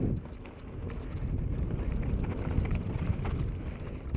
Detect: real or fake real